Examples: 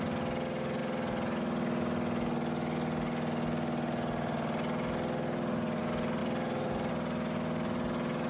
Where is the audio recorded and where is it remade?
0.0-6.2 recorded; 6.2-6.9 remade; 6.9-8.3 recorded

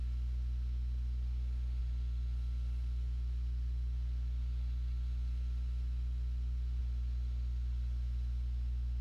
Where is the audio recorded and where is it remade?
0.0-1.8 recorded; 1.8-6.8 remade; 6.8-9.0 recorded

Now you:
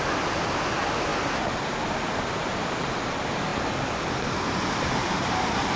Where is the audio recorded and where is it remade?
0.0-5.8 recorded